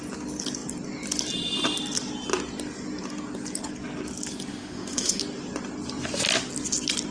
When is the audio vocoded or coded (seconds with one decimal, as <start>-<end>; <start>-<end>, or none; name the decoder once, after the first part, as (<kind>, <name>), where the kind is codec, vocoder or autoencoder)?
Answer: 4.5-5.2 (autoencoder, DAC-VAE)